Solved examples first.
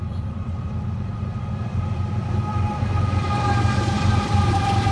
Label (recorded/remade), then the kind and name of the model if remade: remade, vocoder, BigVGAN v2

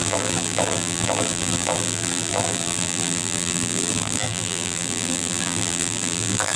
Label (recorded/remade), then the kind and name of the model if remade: remade, vocoder, BigVGAN v2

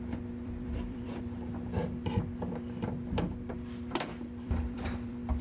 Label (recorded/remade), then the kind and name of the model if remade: remade, vocoder, BigVGAN v2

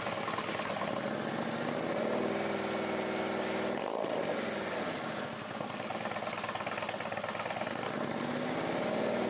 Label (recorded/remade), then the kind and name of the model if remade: recorded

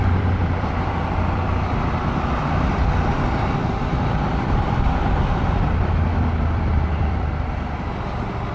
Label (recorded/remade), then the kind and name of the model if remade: remade, vocoder, BigVGAN v2